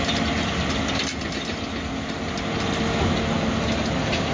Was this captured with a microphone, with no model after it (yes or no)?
yes